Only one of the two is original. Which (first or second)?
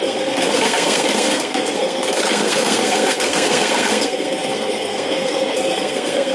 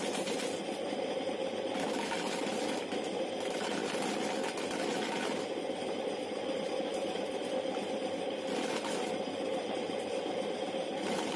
second